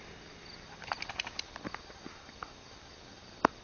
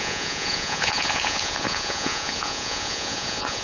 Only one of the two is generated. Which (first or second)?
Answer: second